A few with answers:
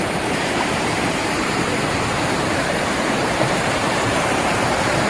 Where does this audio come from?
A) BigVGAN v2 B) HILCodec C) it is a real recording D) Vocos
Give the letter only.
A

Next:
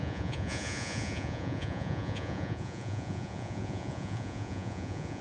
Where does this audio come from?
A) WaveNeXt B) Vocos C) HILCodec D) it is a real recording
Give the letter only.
B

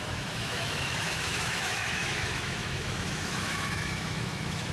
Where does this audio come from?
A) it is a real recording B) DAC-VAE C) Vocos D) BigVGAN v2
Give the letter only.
B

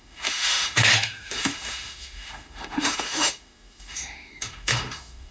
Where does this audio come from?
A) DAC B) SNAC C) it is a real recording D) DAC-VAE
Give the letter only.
D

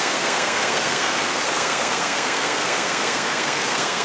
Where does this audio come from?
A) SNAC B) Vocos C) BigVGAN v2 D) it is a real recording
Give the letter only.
A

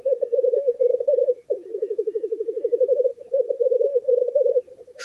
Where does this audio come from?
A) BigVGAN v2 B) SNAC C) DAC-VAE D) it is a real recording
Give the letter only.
C